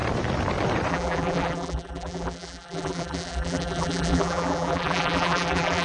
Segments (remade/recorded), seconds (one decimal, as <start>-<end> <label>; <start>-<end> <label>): 0.0-0.9 recorded; 0.9-5.8 remade